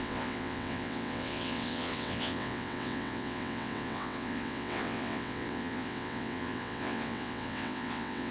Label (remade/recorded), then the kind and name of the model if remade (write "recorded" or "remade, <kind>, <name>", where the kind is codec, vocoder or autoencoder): remade, vocoder, WaveNeXt